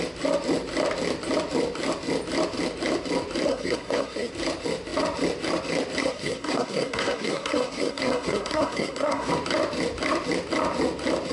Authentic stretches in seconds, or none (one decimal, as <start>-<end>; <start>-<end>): 0.0-3.5; 4.3-6.0; 9.3-11.3